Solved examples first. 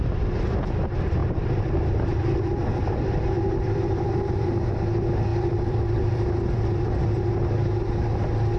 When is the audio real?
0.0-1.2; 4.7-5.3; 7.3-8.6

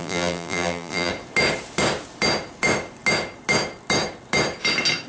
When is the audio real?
1.1-5.1

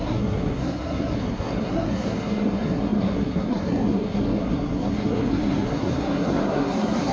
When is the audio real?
none

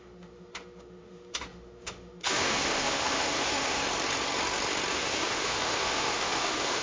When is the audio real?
3.8-4.9

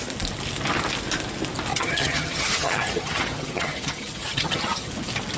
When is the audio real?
0.0-1.7; 4.9-5.4